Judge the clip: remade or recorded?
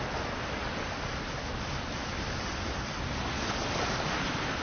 recorded